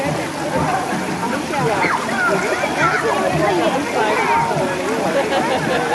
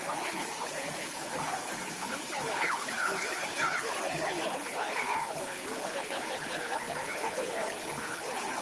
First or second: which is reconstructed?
second